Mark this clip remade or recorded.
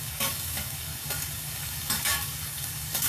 remade